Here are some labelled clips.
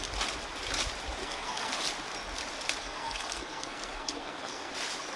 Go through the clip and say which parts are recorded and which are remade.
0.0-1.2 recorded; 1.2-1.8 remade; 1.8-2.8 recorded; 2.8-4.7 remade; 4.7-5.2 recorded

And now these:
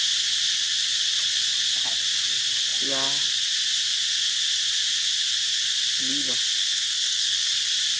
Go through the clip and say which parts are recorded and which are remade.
0.0-6.6 recorded; 6.6-7.5 remade; 7.5-8.0 recorded

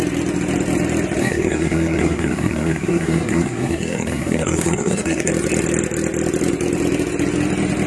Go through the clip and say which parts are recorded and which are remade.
0.0-1.2 recorded; 1.2-5.3 remade; 5.3-7.9 recorded

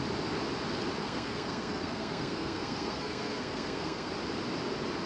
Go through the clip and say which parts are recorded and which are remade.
0.0-1.0 recorded; 1.0-4.1 remade; 4.1-5.1 recorded

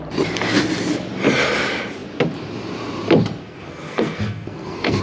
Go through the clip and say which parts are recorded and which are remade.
0.0-3.4 recorded; 3.4-5.0 remade

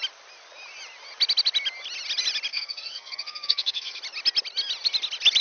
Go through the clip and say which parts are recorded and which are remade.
0.0-2.5 recorded; 2.5-4.0 remade; 4.0-5.4 recorded

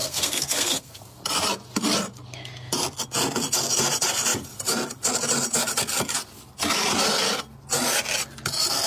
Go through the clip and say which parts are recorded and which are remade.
0.0-1.0 remade; 1.0-8.9 recorded